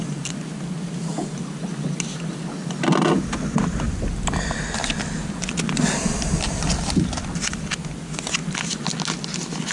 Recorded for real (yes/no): yes